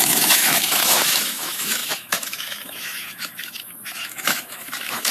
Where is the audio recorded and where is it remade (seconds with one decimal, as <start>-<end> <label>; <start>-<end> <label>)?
0.0-5.1 remade